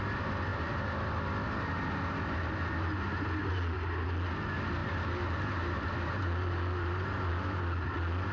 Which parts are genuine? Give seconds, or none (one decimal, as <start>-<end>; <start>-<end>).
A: 0.0-8.3